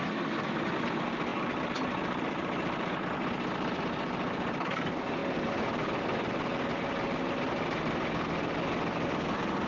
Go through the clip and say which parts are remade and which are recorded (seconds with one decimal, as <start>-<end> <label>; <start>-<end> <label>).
0.0-9.7 recorded